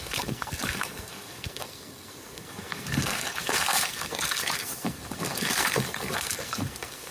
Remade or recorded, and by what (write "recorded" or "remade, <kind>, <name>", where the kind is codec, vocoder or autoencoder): remade, codec, SNAC